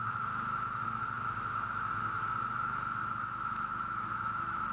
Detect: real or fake fake